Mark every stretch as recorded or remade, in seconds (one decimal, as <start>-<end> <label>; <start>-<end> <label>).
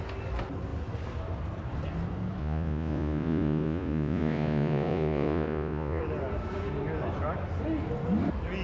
0.0-2.4 recorded; 2.4-6.0 remade; 6.0-8.6 recorded